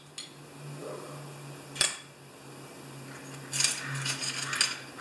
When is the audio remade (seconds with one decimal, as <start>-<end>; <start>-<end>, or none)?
0.8-3.8